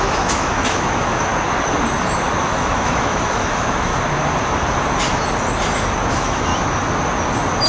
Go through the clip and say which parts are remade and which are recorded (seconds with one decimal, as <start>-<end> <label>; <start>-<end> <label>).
0.0-1.3 remade; 1.3-2.4 recorded; 2.4-3.9 remade; 3.9-6.1 recorded; 6.1-6.5 remade; 6.5-7.7 recorded